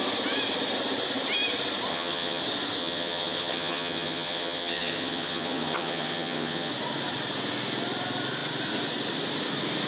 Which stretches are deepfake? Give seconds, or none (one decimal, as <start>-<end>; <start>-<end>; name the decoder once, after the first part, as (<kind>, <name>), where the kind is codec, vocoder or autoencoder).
1.9-2.4 (vocoder, HiFi-GAN); 2.8-6.7